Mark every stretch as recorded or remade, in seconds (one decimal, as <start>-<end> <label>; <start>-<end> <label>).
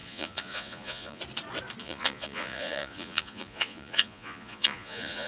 0.0-1.2 remade; 1.2-1.8 recorded; 1.8-5.3 remade